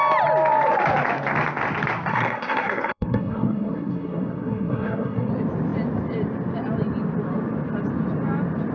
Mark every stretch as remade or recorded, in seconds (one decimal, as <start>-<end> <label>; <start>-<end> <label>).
0.0-2.1 recorded; 2.1-5.3 remade; 5.3-8.7 recorded

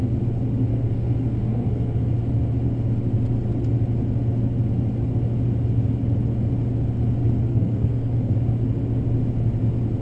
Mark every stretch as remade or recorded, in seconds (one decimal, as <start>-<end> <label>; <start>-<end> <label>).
0.0-0.7 recorded; 0.7-2.1 remade; 2.1-7.5 recorded; 7.5-8.3 remade; 8.3-10.0 recorded